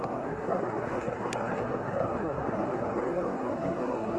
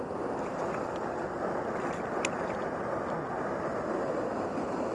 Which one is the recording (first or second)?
second